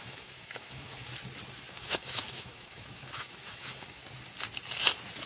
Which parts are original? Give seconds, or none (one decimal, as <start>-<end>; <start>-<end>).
1.1-1.7; 4.0-5.3